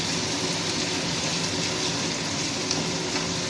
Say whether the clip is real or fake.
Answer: real